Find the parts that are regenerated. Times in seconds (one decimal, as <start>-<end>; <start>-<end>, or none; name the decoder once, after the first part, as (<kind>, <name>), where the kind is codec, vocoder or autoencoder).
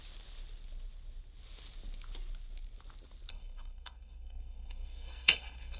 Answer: 3.3-5.8 (codec, SNAC)